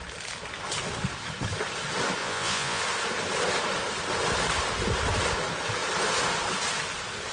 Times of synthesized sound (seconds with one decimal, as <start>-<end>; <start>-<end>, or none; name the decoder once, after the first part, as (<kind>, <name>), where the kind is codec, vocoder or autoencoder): 2.2-2.8 (vocoder, Vocos)